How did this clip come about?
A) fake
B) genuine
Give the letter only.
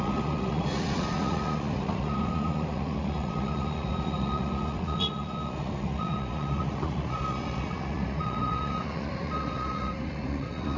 A